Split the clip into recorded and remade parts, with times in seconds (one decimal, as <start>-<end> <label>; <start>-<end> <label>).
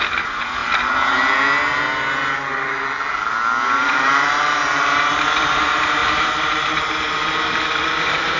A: 0.0-0.6 remade; 0.6-3.8 recorded; 3.8-8.4 remade